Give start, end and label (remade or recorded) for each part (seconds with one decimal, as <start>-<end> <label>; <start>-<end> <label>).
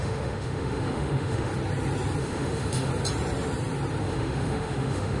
0.0-1.5 remade; 1.5-2.2 recorded; 2.2-2.9 remade; 2.9-4.0 recorded; 4.0-5.2 remade